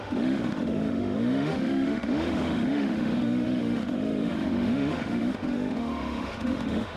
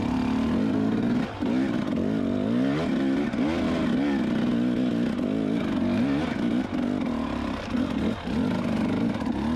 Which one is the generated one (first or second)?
first